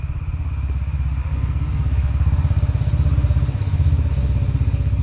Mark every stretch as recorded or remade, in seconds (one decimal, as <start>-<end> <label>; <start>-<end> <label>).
0.0-1.2 recorded; 1.2-2.1 remade; 2.1-5.0 recorded